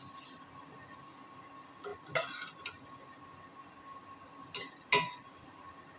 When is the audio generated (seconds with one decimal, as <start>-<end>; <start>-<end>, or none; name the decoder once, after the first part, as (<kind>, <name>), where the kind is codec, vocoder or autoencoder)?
none